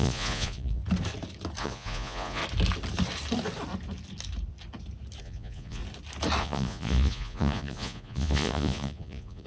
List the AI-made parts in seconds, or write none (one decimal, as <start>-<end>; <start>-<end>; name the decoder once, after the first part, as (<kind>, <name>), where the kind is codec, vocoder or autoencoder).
0.0-0.8 (vocoder, Vocos); 1.6-2.4; 5.2-5.8; 6.4-9.5